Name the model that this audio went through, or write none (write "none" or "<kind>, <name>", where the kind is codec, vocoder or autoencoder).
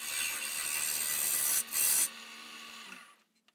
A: none